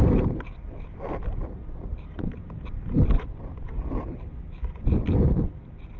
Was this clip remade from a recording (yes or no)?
no